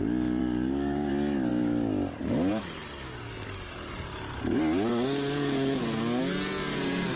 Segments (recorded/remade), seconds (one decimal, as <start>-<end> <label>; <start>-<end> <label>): 0.0-0.4 recorded; 0.4-1.1 remade; 1.1-4.9 recorded; 4.9-6.2 remade; 6.2-7.2 recorded